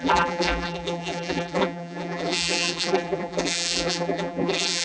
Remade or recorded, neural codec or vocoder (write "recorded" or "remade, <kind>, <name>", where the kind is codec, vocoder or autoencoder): remade, vocoder, BigVGAN v2